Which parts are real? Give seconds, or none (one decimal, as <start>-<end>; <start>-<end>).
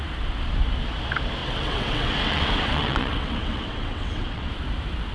0.0-1.4; 4.5-5.1